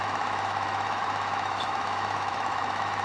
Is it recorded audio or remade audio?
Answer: remade